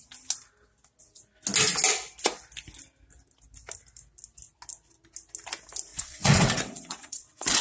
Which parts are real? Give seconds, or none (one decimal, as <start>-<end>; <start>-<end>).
0.0-5.9